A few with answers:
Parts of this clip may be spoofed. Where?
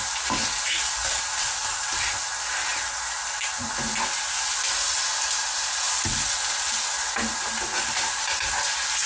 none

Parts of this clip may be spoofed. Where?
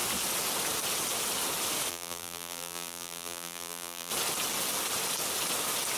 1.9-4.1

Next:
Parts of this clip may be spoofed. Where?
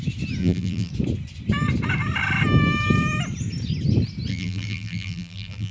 0.4-0.9; 4.3-5.7